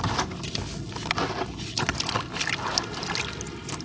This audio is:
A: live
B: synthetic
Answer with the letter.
A